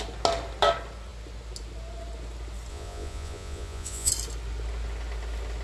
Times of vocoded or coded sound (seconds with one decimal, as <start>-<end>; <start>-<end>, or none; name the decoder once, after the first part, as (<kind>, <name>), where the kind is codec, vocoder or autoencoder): 2.7-4.1 (vocoder, Vocos)